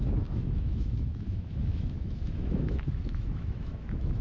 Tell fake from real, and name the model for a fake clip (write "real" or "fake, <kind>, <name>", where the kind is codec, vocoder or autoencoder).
fake, autoencoder, DAC-VAE